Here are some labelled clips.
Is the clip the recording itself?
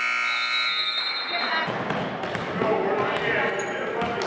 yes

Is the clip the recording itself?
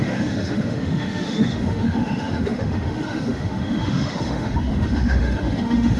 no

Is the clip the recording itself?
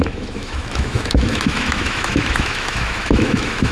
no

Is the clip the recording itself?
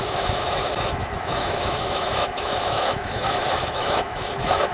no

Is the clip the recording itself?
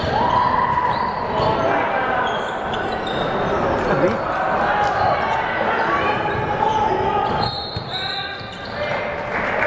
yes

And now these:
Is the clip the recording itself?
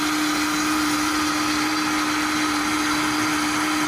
yes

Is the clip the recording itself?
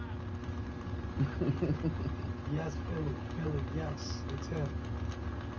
yes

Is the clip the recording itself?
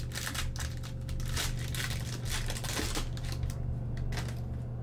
yes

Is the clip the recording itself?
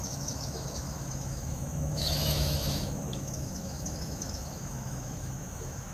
no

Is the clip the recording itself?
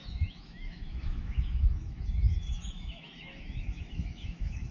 no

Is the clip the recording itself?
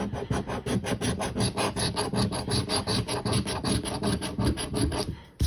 yes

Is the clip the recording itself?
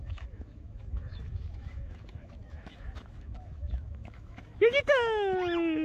no